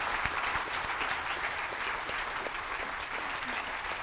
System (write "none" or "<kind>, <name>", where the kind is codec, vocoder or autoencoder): none